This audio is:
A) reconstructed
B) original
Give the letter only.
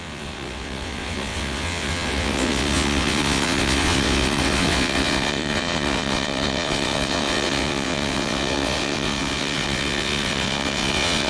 A